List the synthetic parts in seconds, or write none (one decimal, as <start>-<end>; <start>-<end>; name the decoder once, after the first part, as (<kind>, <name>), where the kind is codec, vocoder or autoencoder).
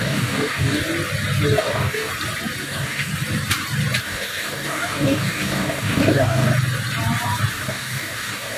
0.0-0.8 (codec, DAC); 1.6-2.1; 2.6-3.1; 4.0-6.5; 7.5-8.6